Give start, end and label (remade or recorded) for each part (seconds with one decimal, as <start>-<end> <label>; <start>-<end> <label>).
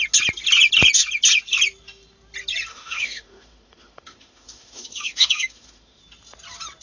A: 0.0-2.7 recorded; 2.7-6.0 remade; 6.0-6.8 recorded